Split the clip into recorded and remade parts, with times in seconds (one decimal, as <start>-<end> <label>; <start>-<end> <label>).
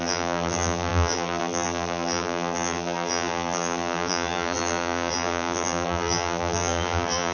0.0-7.3 remade